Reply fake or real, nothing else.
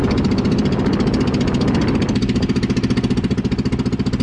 real